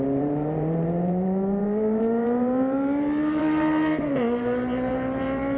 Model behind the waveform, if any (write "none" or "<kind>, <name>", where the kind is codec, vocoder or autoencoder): vocoder, BigVGAN v2